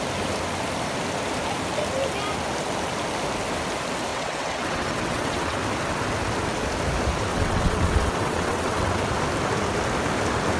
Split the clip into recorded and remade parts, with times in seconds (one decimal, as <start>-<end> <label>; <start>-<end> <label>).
0.0-4.1 recorded; 4.1-5.6 remade; 5.6-7.3 recorded; 7.3-9.0 remade; 9.0-10.6 recorded